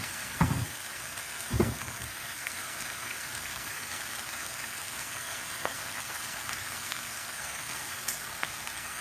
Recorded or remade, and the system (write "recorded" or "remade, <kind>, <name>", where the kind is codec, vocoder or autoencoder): remade, codec, SNAC